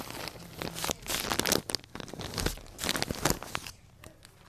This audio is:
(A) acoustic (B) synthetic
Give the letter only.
A